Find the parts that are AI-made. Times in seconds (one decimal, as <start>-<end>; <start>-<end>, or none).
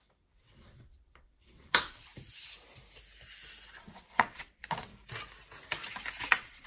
0.0-2.1; 3.8-4.9; 6.3-6.7